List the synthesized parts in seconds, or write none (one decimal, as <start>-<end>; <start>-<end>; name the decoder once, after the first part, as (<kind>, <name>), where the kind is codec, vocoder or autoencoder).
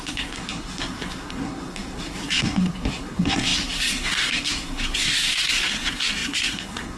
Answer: 0.0-7.0 (codec, SNAC)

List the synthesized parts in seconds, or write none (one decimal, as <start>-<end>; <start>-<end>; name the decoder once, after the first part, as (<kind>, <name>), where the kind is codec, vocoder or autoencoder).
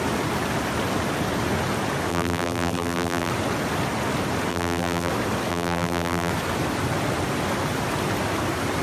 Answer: 2.1-3.3 (vocoder, BigVGAN v2); 4.5-5.1; 5.5-6.3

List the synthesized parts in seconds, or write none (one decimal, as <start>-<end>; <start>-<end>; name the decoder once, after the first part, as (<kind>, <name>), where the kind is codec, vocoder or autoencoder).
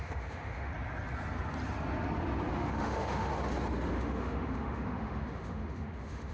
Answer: 0.0-0.7 (autoencoder, DAC-VAE); 2.5-3.3; 3.9-6.3